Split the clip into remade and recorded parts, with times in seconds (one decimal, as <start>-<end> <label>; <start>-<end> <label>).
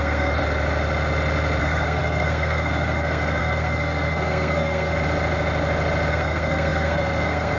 0.0-0.4 remade; 0.4-1.6 recorded; 1.6-4.9 remade; 4.9-6.1 recorded; 6.1-7.6 remade